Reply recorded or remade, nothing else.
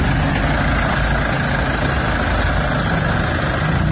recorded